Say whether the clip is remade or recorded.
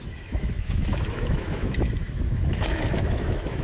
remade